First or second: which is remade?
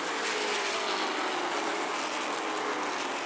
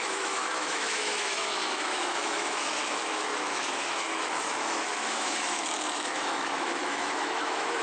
second